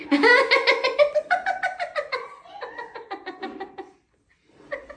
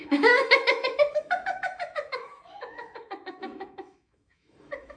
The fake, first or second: second